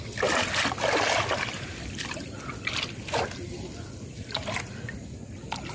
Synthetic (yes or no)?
no